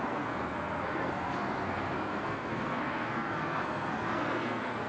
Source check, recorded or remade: remade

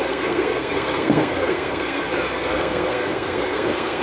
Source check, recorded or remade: remade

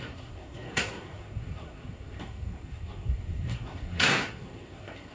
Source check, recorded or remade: remade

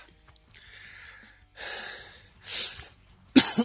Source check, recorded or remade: recorded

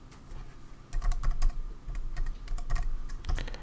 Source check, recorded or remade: recorded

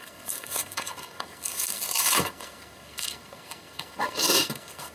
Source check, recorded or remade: remade